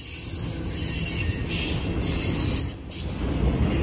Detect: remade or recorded recorded